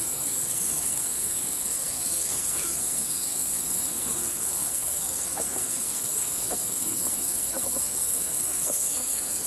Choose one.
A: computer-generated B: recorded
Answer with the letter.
A